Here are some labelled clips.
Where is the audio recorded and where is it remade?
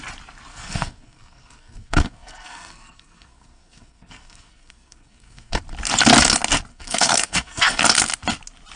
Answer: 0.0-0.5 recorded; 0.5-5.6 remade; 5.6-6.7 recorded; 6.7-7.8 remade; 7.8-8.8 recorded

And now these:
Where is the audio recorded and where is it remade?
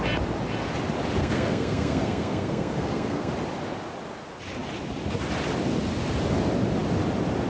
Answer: 0.0-1.2 recorded; 1.2-3.3 remade; 3.3-7.5 recorded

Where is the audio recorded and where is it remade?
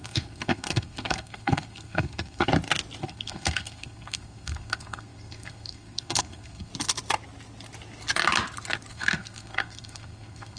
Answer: 0.0-2.5 remade; 2.5-3.0 recorded; 3.0-6.7 remade; 6.7-8.9 recorded; 8.9-10.6 remade